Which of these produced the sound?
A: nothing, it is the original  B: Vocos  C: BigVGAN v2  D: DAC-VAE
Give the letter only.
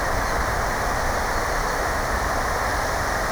A